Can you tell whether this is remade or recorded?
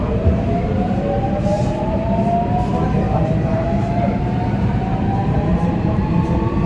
remade